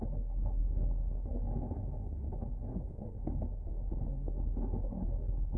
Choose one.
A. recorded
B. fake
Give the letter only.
B